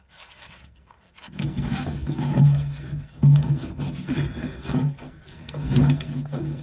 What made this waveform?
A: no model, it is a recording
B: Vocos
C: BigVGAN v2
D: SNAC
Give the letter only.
D